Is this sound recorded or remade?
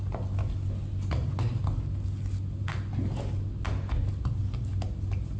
recorded